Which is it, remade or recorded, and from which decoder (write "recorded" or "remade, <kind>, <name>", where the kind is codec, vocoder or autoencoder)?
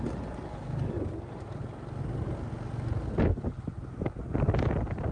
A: recorded